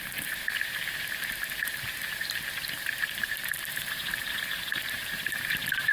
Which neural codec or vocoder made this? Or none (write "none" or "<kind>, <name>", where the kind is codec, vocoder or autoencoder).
vocoder, BigVGAN v2